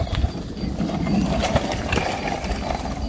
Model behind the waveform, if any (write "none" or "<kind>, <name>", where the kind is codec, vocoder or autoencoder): none